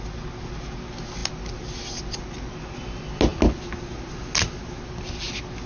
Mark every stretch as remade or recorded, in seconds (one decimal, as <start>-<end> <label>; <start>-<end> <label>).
0.0-5.7 recorded